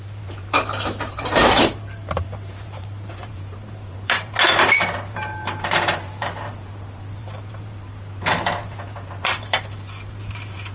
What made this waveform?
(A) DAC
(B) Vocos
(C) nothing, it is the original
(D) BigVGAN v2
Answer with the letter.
D